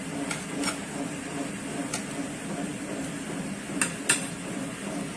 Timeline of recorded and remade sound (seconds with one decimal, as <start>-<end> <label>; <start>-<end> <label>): 0.0-5.2 recorded